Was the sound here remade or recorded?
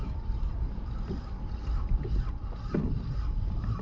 recorded